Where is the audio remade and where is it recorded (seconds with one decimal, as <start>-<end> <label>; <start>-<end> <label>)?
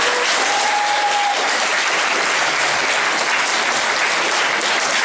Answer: 0.0-5.0 recorded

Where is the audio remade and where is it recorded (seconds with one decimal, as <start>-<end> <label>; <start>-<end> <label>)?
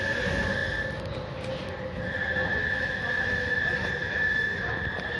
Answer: 0.0-2.5 recorded; 2.5-3.6 remade; 3.6-4.0 recorded; 4.0-4.8 remade; 4.8-5.2 recorded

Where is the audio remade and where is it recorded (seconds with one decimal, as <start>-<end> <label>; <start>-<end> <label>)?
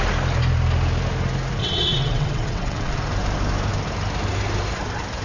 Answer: 0.0-1.6 recorded; 1.6-2.9 remade; 2.9-5.2 recorded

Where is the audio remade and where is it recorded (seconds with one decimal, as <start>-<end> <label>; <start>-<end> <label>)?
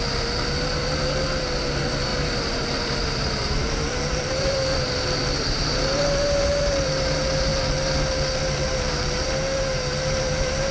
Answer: 0.0-7.5 remade; 7.5-8.4 recorded; 8.4-10.7 remade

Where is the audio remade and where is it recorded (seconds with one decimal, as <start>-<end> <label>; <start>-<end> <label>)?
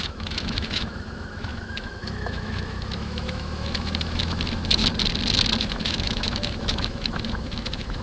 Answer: 0.0-4.8 remade; 4.8-5.6 recorded; 5.6-8.0 remade